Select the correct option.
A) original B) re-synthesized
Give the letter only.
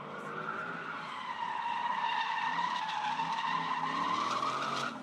B